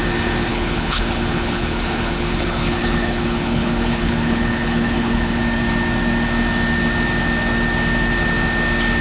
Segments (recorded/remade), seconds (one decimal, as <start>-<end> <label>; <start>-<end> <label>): 0.0-0.5 recorded; 0.5-5.4 remade; 5.4-9.0 recorded